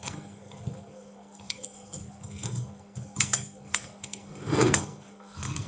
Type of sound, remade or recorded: remade